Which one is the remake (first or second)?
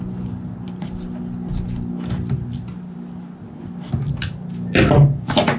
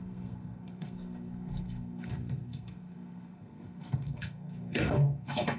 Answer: second